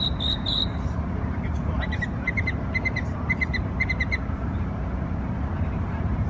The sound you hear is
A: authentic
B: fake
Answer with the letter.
B